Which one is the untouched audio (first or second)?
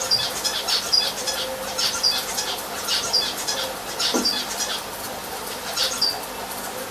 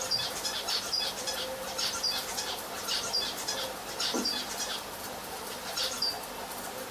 first